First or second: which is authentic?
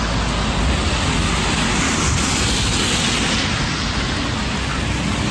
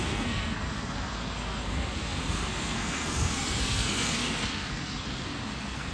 first